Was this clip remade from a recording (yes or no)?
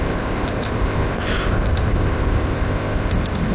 yes